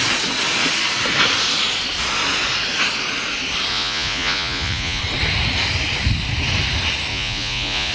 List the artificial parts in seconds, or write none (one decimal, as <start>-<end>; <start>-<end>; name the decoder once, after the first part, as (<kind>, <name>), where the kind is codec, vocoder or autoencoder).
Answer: 3.7-5.0 (vocoder, Vocos); 7.1-7.9

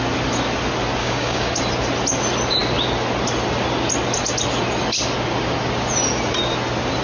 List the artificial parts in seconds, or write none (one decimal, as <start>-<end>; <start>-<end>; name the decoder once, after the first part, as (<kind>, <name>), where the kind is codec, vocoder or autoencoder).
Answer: 1.0-1.5 (codec, DAC)